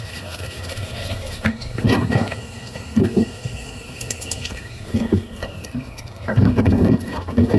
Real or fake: fake